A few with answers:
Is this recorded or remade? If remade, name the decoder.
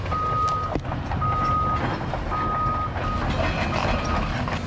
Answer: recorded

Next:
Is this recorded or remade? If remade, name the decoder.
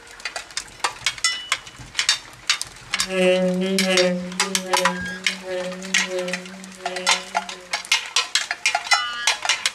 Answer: recorded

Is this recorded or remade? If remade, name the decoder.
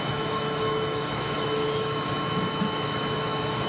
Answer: remade, autoencoder, DAC-VAE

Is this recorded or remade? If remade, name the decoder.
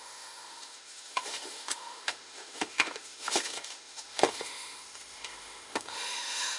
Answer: remade, autoencoder, DAC-VAE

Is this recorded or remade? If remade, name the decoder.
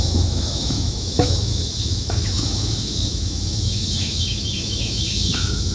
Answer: remade, autoencoder, DAC-VAE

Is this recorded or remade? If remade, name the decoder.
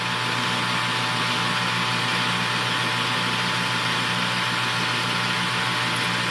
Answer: recorded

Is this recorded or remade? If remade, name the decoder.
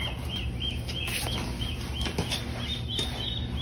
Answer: recorded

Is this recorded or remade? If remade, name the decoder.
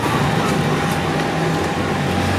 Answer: recorded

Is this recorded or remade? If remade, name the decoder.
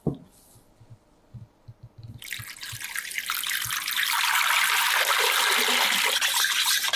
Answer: recorded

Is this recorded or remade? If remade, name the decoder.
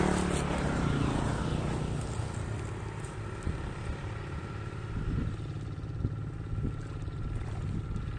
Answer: recorded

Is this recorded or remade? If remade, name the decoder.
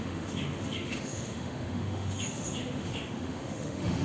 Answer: remade, autoencoder, DAC-VAE